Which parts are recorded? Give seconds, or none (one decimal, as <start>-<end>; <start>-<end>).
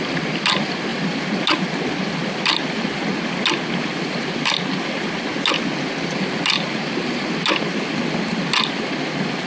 0.0-9.5